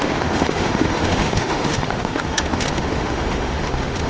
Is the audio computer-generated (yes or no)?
yes